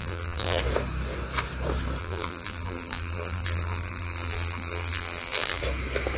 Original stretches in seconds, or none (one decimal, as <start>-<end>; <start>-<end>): 0.6-2.0; 5.6-6.2